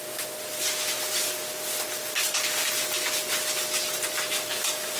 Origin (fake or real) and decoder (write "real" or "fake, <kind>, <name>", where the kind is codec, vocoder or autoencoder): fake, vocoder, BigVGAN v2